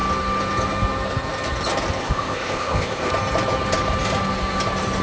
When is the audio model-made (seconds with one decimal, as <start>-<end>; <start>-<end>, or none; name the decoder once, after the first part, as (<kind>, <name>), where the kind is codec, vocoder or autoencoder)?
2.0-3.1 (codec, ZipCodec)